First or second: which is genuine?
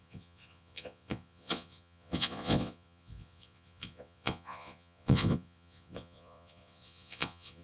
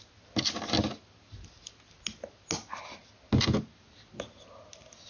second